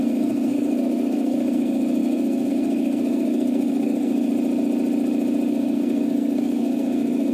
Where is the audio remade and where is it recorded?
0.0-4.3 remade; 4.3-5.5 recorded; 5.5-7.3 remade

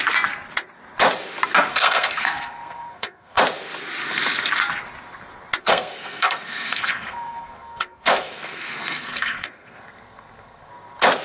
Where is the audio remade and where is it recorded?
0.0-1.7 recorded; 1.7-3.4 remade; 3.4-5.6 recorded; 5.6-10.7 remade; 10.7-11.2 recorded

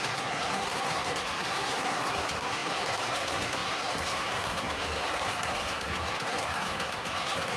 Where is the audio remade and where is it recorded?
0.0-7.6 remade

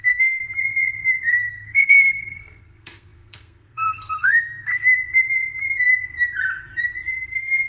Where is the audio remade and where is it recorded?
0.0-0.4 remade; 0.4-1.3 recorded; 1.3-4.7 remade; 4.7-7.2 recorded; 7.2-7.7 remade

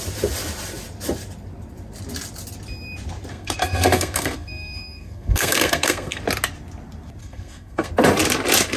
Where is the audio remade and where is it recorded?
0.0-3.3 recorded; 3.3-6.2 remade; 6.2-7.2 recorded; 7.2-7.9 remade; 7.9-8.8 recorded

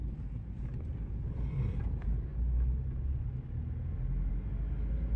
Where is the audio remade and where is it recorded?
0.0-5.2 recorded